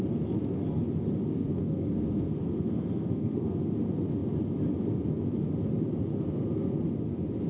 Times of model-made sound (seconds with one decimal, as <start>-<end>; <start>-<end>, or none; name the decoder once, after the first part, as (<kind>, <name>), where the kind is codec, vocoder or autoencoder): 1.3-3.6 (codec, SNAC); 6.1-6.8